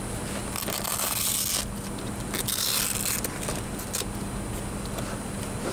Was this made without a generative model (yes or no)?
yes